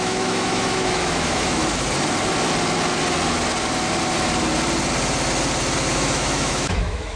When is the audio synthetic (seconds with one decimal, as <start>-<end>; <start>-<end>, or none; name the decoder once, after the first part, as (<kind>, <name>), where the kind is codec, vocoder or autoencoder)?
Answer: 0.0-1.6 (autoencoder, DAC-VAE); 5.9-7.2